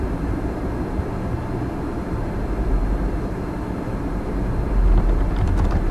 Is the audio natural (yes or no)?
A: no